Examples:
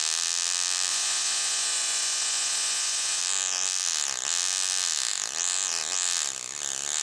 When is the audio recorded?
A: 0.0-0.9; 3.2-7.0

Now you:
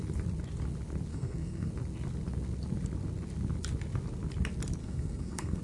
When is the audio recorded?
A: 0.0-1.1; 1.7-4.8

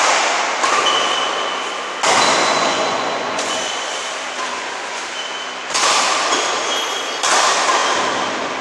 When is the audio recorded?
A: 0.0-2.4; 4.0-4.5; 5.0-8.6

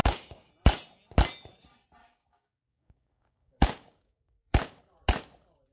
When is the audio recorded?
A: 0.5-2.0; 4.8-5.7

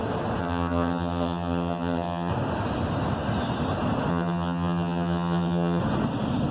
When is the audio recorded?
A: 0.0-0.4; 2.3-4.1; 5.8-6.5

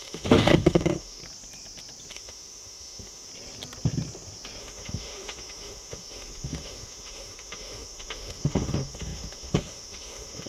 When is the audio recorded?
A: 1.2-2.1; 3.3-4.6

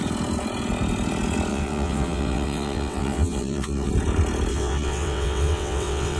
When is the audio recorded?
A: 0.0-1.5; 3.9-4.5